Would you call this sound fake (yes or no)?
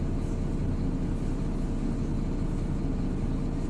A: no